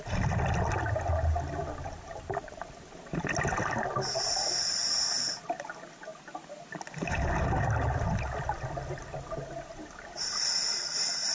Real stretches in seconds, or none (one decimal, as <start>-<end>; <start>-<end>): 0.0-11.3